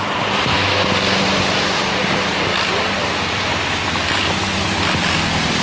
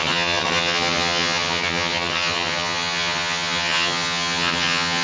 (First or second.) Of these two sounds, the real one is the first